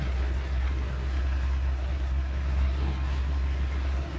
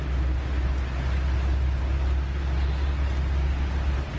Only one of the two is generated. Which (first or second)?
first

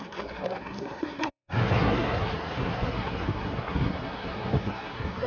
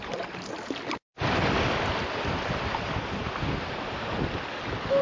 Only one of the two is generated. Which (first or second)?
first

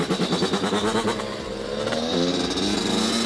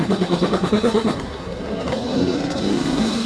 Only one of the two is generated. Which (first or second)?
second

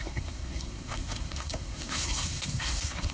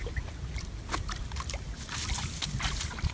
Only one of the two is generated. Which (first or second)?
first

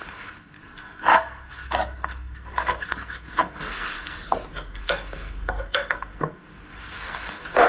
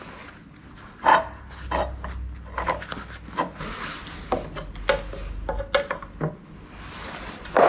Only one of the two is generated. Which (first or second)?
first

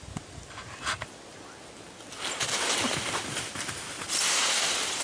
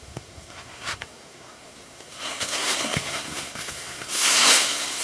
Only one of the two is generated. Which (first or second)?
second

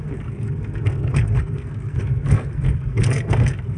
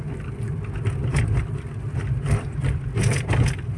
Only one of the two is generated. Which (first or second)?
first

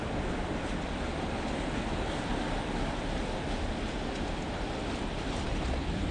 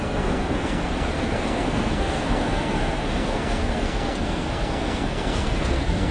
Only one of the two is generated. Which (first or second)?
second